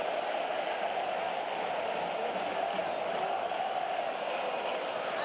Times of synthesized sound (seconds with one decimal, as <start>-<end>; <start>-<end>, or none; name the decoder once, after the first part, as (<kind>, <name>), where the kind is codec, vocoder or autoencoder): none